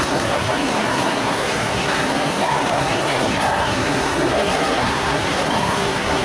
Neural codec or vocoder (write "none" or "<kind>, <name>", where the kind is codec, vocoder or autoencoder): codec, SNAC